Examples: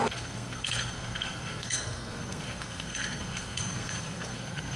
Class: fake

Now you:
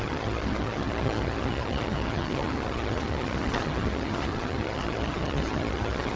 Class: fake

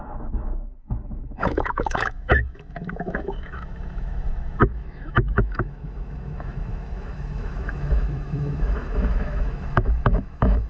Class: fake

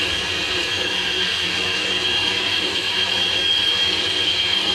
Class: fake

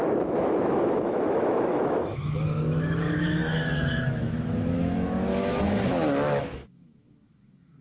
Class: fake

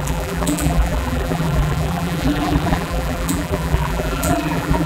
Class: fake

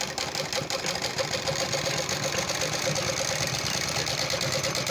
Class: real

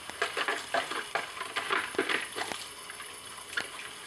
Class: real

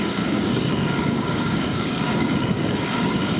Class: fake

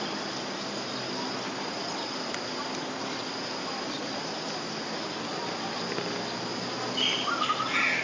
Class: real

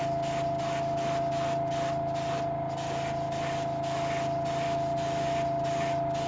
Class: real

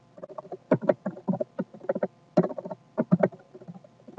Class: real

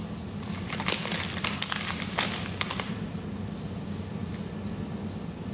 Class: real